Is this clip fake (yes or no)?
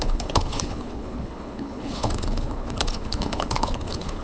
yes